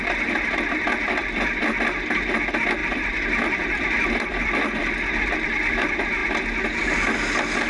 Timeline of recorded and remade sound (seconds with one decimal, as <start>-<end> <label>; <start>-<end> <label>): 0.0-1.0 recorded; 1.0-1.6 remade; 1.6-2.8 recorded; 2.8-4.8 remade; 4.8-7.7 recorded